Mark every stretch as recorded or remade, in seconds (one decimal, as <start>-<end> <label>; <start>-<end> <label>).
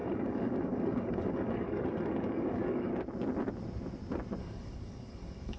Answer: 0.0-2.9 remade; 2.9-4.4 recorded; 4.4-5.6 remade